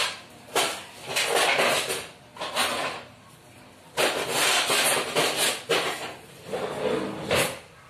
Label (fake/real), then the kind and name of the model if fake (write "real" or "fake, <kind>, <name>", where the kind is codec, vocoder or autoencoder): real